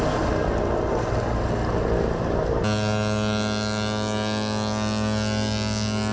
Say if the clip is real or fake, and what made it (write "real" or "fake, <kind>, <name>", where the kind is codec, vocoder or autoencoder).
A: real